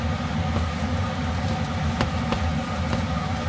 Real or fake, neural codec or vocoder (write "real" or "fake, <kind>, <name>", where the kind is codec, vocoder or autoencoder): real